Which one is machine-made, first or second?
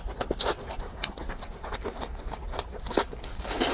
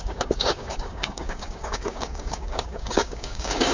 second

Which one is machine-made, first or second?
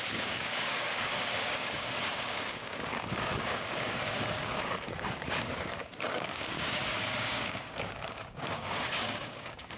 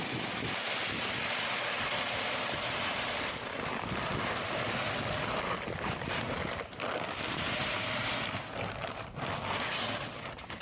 first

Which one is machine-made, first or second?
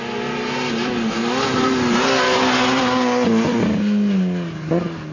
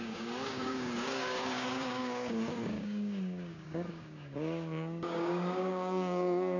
second